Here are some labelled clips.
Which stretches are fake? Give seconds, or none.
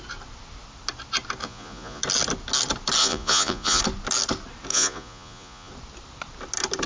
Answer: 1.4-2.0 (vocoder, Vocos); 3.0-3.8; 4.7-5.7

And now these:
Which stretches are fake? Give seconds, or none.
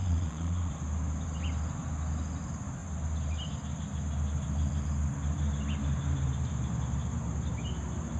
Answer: 0.0-0.7 (vocoder, Vocos)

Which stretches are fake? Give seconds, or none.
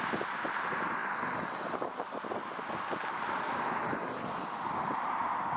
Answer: none